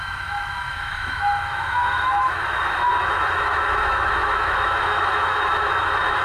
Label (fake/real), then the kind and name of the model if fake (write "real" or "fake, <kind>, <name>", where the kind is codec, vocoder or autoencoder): fake, autoencoder, DAC-VAE